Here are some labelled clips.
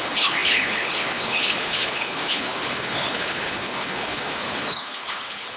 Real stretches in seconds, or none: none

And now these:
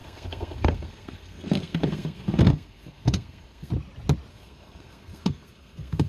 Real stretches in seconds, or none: 3.7-4.3

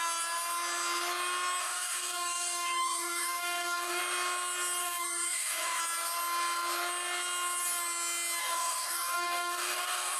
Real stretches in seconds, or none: 0.0-1.6; 4.0-4.8; 5.8-8.4

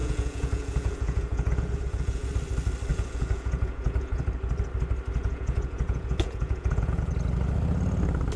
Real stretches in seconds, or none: 2.3-2.9; 4.2-5.2; 7.1-8.4

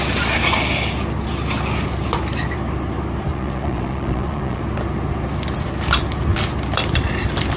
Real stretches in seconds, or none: 0.0-3.3; 4.6-7.6